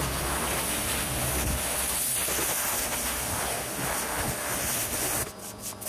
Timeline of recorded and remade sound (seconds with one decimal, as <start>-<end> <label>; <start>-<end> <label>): 0.0-5.9 recorded